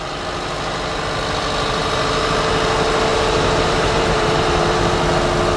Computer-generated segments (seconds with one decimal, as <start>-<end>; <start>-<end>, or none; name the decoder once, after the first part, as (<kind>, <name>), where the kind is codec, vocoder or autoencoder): 3.1-4.9 (vocoder, BigVGAN v2)